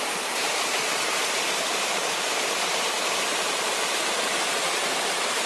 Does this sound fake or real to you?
fake